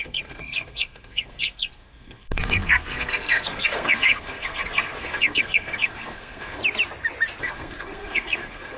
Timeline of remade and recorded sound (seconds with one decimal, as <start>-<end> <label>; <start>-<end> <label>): 0.0-6.6 remade; 6.6-7.4 recorded; 7.4-8.8 remade